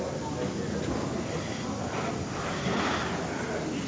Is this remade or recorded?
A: recorded